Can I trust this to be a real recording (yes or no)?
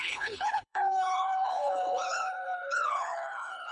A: no